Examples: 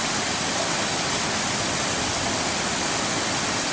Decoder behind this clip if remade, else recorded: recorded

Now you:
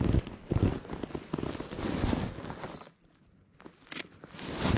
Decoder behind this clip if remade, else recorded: recorded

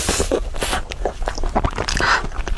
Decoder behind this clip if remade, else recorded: recorded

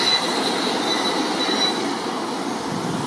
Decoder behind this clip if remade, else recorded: recorded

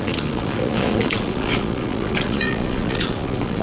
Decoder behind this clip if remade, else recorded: remade, vocoder, Vocos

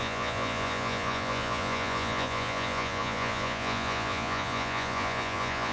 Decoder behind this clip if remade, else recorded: remade, vocoder, Vocos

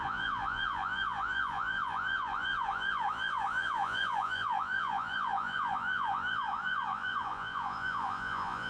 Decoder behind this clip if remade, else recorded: remade, vocoder, Vocos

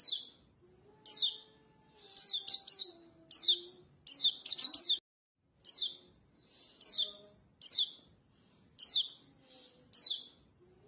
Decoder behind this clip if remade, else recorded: recorded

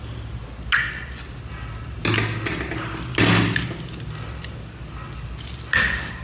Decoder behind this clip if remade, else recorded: recorded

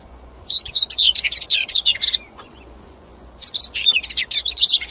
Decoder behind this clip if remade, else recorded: remade, vocoder, Vocos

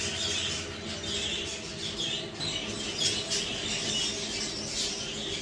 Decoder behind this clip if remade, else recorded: recorded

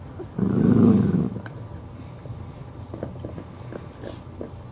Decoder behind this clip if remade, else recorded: recorded